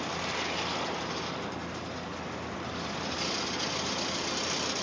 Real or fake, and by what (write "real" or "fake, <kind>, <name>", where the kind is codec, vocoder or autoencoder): real